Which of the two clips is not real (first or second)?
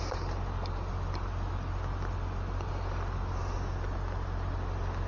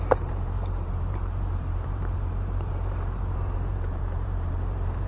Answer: second